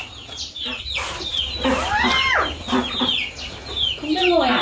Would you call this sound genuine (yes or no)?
yes